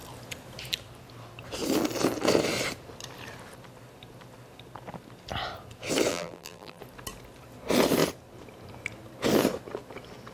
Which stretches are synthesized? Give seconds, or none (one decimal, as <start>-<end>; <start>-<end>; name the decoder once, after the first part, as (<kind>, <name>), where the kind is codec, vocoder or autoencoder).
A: 6.1-6.8 (vocoder, BigVGAN v2)